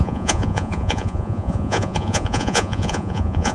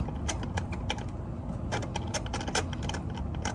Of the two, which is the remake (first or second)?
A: first